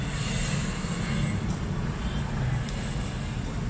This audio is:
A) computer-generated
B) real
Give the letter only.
B